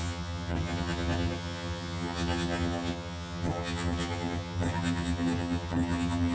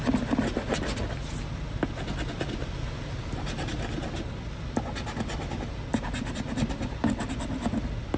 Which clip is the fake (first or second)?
first